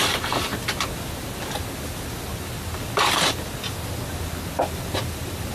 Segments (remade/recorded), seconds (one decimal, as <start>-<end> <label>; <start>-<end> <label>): 0.0-5.5 recorded